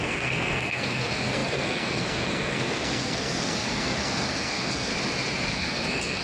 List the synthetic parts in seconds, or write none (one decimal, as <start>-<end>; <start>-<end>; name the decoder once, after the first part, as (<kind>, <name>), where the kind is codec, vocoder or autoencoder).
0.0-4.9 (codec, SNAC); 5.5-6.2